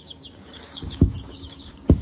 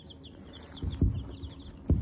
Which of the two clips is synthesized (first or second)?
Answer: first